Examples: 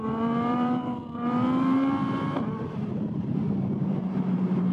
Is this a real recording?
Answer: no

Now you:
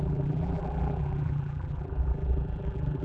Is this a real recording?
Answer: no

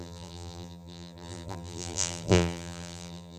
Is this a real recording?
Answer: no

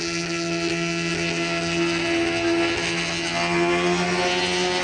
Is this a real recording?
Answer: yes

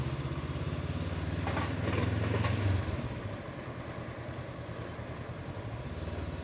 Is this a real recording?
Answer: yes